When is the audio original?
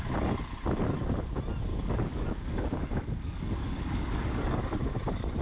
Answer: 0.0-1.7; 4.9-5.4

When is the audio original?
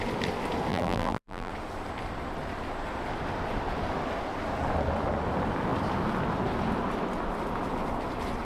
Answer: 0.0-0.7; 1.5-8.4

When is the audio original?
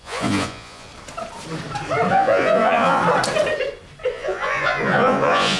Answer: 0.9-2.1; 3.0-4.1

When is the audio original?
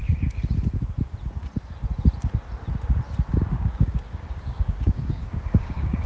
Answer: 0.0-3.3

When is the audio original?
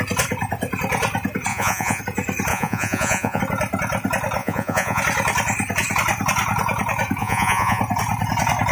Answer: 0.0-1.5; 2.0-2.5; 3.4-4.4; 5.0-7.2; 7.8-8.7